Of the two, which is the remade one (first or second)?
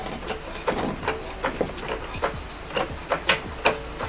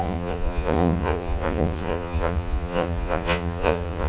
second